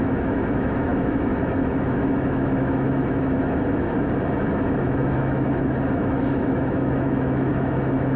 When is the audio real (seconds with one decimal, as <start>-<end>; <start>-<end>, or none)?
none